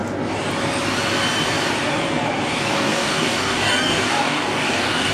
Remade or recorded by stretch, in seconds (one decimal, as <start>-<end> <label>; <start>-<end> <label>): 0.0-2.7 recorded; 2.7-5.1 remade